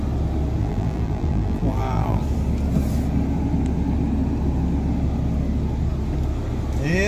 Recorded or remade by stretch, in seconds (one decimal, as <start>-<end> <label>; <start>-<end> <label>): 0.0-0.6 recorded; 0.6-2.2 remade; 2.2-7.1 recorded